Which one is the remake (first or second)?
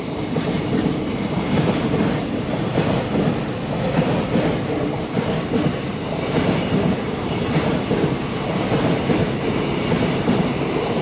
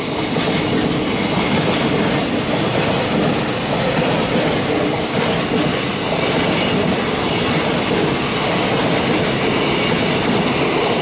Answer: first